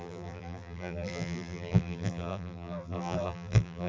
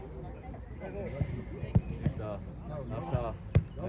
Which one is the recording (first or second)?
second